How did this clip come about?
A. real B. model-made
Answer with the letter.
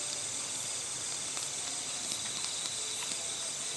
A